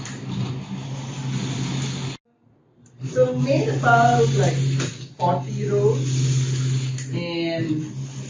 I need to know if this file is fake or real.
real